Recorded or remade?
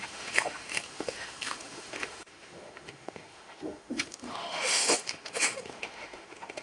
remade